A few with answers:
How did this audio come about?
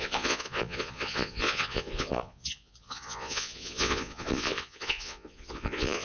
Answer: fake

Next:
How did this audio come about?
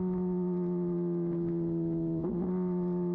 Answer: real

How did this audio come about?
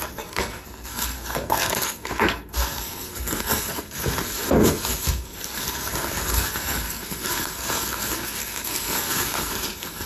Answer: fake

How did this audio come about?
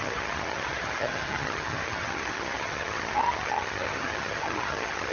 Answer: fake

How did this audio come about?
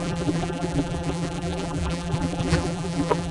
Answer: fake